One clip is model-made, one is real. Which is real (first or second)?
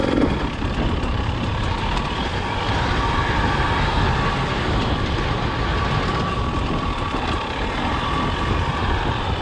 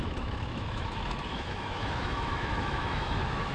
first